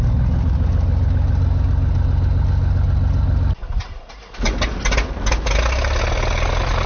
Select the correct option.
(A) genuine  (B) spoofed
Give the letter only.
A